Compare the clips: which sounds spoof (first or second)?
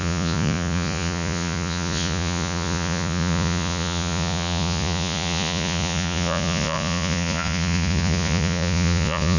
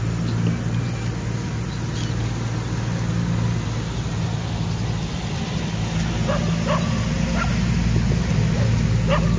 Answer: first